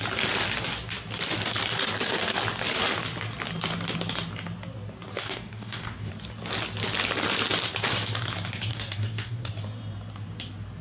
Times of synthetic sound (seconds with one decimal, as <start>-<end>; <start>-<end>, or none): 5.2-6.1; 8.7-9.5